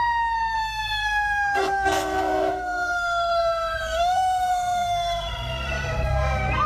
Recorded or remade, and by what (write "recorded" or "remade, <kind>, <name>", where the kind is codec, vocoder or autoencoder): remade, codec, SNAC